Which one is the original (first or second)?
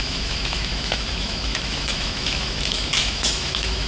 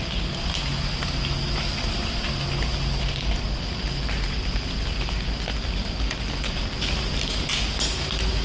second